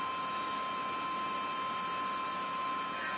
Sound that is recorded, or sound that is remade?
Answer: recorded